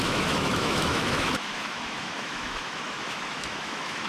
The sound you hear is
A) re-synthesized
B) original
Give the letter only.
A